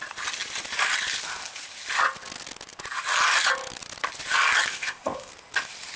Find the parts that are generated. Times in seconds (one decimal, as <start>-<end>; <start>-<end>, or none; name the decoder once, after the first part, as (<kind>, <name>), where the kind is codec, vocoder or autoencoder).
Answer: 4.7-5.3 (codec, ZipCodec)